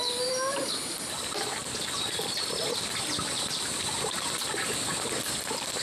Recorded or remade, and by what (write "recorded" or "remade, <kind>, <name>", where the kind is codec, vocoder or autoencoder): remade, vocoder, BigVGAN v2